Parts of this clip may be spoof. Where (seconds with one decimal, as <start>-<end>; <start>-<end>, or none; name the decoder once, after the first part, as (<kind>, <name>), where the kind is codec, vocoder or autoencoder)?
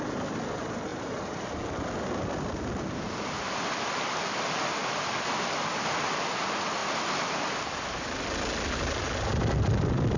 0.9-1.6 (vocoder, BigVGAN v2)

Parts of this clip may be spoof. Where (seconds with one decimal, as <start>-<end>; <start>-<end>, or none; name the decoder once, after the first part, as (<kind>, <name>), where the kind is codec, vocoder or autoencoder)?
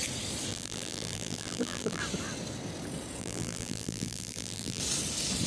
0.5-2.0 (vocoder, BigVGAN v2); 3.2-4.8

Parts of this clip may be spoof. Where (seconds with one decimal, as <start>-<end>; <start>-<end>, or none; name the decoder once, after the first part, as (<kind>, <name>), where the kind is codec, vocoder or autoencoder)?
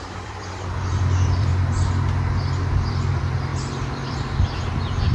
0.0-1.5 (vocoder, BigVGAN v2); 2.7-3.5; 4.1-5.1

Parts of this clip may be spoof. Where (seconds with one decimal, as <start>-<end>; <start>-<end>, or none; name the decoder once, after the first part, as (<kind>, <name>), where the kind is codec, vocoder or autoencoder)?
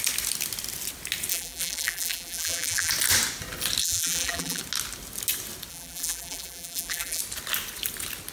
1.3-2.9 (vocoder, BigVGAN v2); 3.8-4.6; 5.7-7.2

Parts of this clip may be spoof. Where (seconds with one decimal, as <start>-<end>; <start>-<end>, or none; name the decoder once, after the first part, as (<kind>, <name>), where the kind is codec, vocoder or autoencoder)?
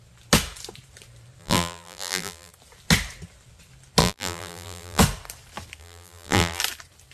1.4-2.5 (vocoder, BigVGAN v2); 4.0-5.0; 5.8-6.6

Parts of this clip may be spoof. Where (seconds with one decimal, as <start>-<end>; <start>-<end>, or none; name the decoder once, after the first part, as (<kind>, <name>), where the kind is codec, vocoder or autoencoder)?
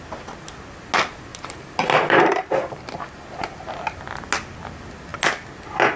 1.3-2.8 (vocoder, BigVGAN v2)